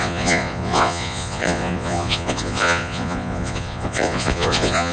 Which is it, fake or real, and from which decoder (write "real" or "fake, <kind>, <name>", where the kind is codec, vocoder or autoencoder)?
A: fake, vocoder, Vocos